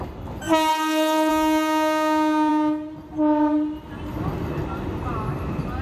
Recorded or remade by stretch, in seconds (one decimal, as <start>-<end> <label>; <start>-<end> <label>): 0.0-0.7 recorded; 0.7-1.3 remade; 1.3-5.8 recorded